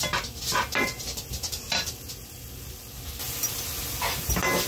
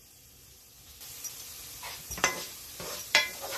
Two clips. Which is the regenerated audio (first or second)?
second